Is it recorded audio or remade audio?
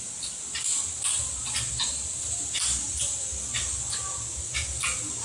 recorded